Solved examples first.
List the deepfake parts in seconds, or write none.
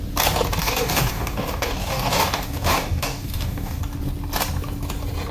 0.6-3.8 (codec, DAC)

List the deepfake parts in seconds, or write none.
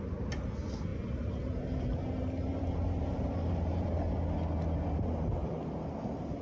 3.4-3.9 (vocoder, BigVGAN v2); 5.4-6.4